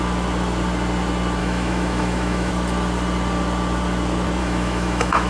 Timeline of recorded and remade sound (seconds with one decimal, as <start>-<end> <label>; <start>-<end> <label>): 0.0-1.4 recorded; 1.4-2.5 remade; 2.5-4.4 recorded; 4.4-5.3 remade